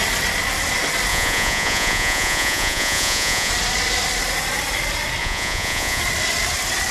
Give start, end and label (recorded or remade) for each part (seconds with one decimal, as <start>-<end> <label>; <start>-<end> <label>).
0.0-1.1 recorded; 1.1-3.5 remade; 3.5-5.2 recorded; 5.2-6.0 remade; 6.0-6.9 recorded

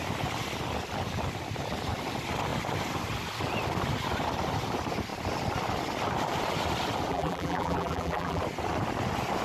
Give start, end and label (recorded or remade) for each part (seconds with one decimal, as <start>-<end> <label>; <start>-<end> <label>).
0.0-7.1 recorded; 7.1-8.4 remade; 8.4-9.4 recorded

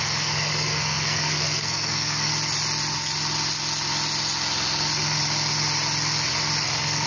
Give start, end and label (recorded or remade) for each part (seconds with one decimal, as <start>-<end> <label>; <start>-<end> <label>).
0.0-2.3 remade; 2.3-6.6 recorded; 6.6-7.1 remade

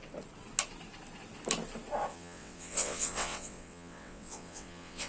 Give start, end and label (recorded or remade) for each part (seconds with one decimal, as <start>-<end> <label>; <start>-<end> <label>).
0.0-2.1 recorded; 2.1-5.1 remade

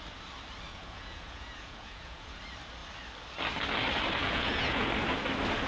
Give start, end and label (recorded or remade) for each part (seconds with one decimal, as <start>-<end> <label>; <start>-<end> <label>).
0.0-0.7 recorded; 0.7-2.4 remade; 2.4-4.2 recorded; 4.2-4.9 remade; 4.9-5.7 recorded

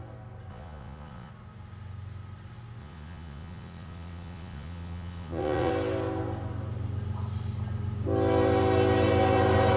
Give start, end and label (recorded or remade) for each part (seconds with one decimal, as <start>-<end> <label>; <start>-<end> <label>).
0.0-0.5 recorded; 0.5-1.3 remade; 1.3-2.8 recorded; 2.8-5.7 remade; 5.7-9.8 recorded

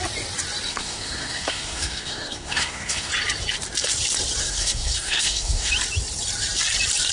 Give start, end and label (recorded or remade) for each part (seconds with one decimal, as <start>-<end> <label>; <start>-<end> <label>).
0.0-0.7 recorded; 0.7-3.1 remade; 3.1-4.4 recorded; 4.4-5.7 remade; 5.7-7.1 recorded